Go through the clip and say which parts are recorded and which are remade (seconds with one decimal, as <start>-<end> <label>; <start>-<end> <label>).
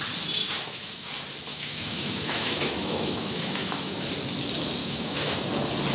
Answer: 0.0-0.4 recorded; 0.4-1.1 remade; 1.1-1.5 recorded; 1.5-4.1 remade; 4.1-4.8 recorded; 4.8-5.5 remade; 5.5-5.9 recorded